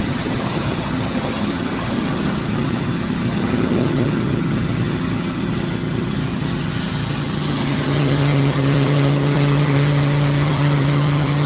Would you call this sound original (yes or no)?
no